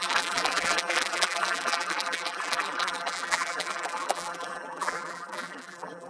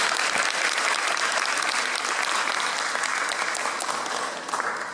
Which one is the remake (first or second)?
first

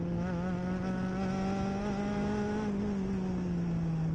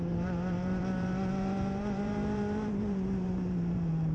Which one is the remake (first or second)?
second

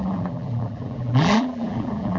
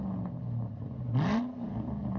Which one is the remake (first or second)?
first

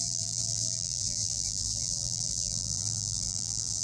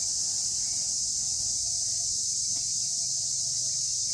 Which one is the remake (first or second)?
first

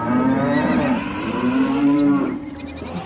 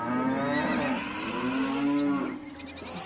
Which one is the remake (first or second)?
first